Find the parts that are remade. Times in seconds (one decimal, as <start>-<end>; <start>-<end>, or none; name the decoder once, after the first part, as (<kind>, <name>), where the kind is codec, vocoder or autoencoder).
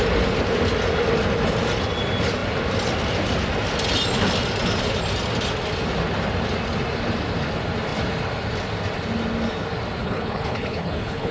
10.0-11.3 (codec, HILCodec)